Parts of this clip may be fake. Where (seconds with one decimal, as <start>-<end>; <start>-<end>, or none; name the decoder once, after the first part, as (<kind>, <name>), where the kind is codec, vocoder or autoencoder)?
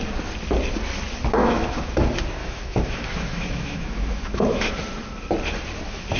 1.4-1.9 (autoencoder, DAC-VAE); 2.4-4.7